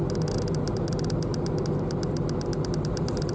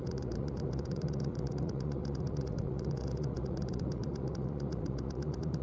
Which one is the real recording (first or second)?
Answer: first